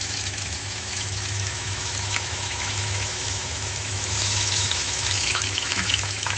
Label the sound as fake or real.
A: fake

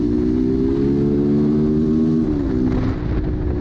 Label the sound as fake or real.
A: real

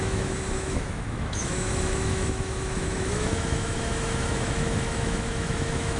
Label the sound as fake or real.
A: fake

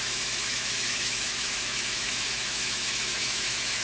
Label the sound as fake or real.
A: fake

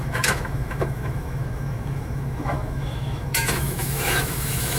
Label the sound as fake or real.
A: fake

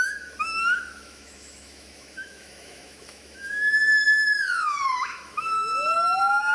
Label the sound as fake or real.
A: fake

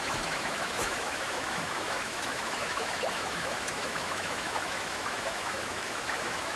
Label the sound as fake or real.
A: fake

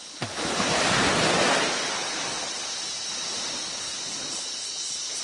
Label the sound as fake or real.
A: real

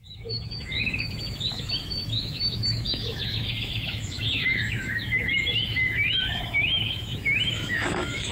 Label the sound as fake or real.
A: fake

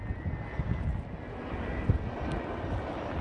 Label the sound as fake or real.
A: real